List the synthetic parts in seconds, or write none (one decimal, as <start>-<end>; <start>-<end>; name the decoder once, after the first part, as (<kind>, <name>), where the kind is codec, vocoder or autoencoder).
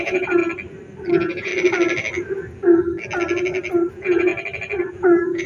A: 0.0-0.4 (vocoder, Vocos); 1.1-1.5; 3.9-4.3; 4.9-5.5